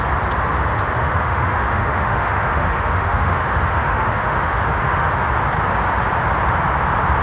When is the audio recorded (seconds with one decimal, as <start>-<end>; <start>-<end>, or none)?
0.0-1.0; 5.3-7.2